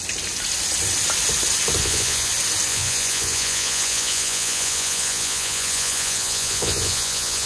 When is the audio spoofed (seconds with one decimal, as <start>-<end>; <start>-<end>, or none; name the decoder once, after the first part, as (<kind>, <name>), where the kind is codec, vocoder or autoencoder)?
1.8-2.3 (vocoder, Vocos); 2.7-7.5